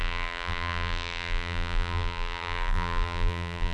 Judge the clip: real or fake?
fake